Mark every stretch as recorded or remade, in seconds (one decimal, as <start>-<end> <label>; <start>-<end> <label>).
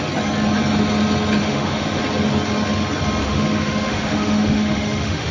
0.0-1.4 recorded; 1.4-2.0 remade; 2.0-3.2 recorded; 3.2-5.3 remade